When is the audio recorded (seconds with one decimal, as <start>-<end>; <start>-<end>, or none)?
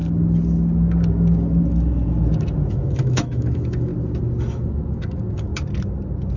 0.0-2.7; 3.9-4.4; 5.5-6.4